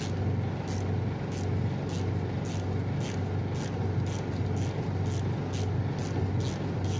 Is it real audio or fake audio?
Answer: real